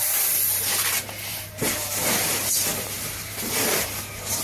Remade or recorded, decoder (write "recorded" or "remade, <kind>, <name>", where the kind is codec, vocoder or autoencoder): remade, vocoder, BigVGAN v2